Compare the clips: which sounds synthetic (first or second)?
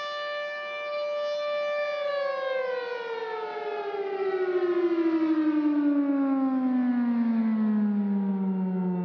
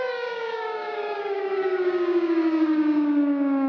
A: second